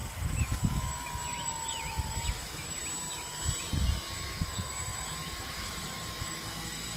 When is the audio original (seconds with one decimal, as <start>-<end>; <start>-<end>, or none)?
2.8-4.3